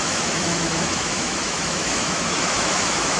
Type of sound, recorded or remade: remade